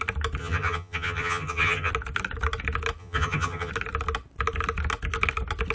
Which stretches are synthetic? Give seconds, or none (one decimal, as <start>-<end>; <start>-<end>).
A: 0.4-1.9; 3.0-3.7